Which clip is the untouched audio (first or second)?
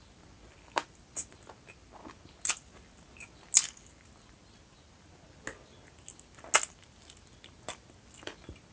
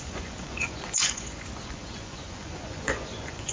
first